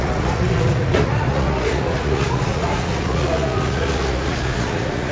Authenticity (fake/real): fake